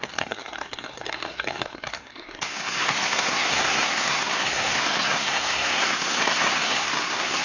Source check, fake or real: fake